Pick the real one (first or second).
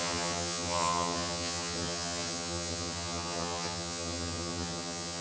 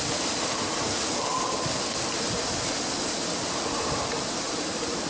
second